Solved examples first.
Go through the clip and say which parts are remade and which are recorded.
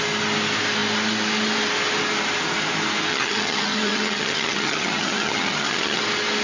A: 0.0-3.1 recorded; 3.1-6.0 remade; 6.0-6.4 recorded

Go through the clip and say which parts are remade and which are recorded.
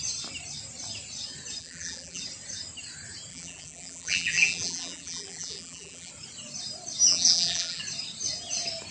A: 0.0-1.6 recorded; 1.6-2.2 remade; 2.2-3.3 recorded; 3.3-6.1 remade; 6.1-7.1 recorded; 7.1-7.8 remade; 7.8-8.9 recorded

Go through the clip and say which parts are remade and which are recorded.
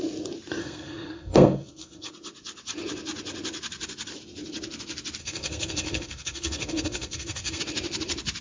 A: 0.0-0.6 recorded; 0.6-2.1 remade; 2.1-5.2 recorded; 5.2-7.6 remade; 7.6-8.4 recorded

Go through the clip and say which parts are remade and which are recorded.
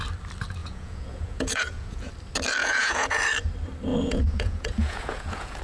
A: 0.0-0.6 recorded; 0.6-2.1 remade; 2.1-2.6 recorded; 2.6-3.2 remade; 3.2-3.9 recorded; 3.9-5.6 remade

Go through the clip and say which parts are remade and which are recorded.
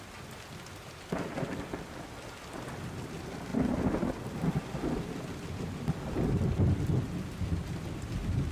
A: 0.0-8.5 recorded